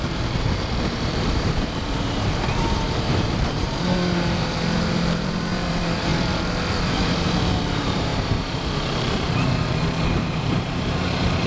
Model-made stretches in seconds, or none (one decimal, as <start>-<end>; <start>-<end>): 0.0-6.1; 6.8-11.5